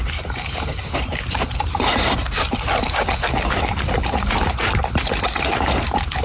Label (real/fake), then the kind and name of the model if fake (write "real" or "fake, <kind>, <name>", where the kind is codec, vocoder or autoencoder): real